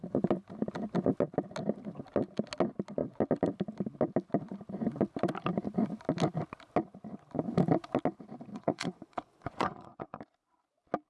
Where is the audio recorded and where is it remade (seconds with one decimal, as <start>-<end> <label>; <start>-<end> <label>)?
0.0-8.5 recorded; 8.5-10.2 remade; 10.2-11.1 recorded